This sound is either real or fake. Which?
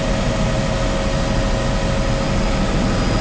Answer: real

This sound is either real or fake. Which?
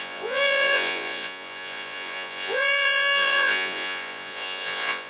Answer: fake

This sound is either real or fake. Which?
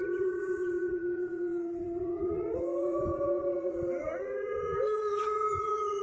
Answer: fake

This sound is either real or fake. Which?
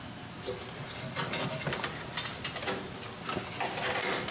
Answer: real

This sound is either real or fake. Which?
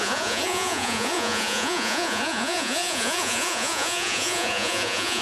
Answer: fake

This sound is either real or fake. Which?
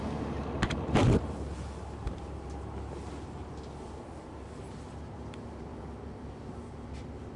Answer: real